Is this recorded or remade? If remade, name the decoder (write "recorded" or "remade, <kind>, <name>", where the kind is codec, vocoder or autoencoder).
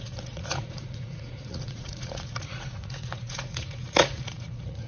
remade, vocoder, Vocos